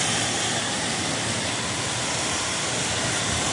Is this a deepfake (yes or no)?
yes